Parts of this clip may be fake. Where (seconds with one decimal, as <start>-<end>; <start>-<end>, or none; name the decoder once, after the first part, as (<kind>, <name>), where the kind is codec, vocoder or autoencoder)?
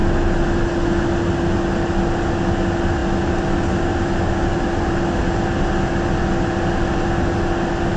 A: none